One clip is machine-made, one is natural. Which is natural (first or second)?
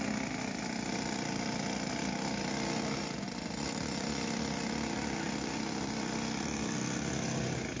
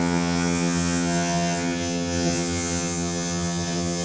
first